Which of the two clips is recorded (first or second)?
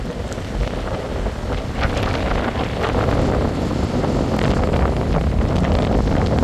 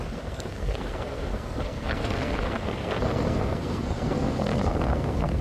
first